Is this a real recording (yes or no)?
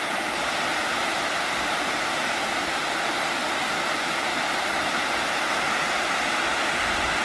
yes